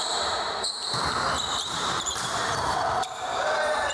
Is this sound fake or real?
fake